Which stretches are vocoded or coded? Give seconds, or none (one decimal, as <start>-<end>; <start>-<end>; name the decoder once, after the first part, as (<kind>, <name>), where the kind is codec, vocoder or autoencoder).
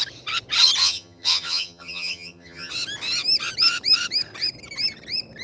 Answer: 0.8-2.7 (vocoder, HiFi-GAN)